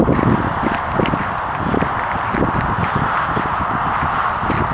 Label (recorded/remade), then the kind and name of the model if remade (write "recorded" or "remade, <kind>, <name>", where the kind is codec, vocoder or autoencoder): recorded